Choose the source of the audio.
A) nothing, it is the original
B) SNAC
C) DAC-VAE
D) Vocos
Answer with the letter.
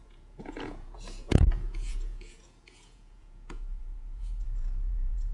D